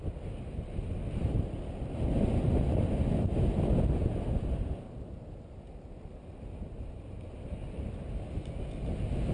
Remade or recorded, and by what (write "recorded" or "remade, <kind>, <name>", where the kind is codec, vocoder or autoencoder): recorded